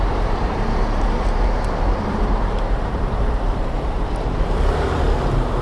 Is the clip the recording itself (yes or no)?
no